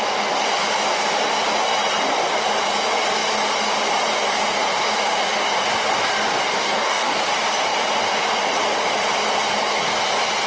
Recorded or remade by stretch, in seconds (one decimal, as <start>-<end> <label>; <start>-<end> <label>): 0.0-6.6 recorded; 6.6-7.2 remade; 7.2-10.5 recorded